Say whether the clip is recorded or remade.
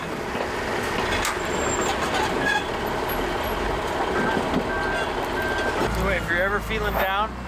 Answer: recorded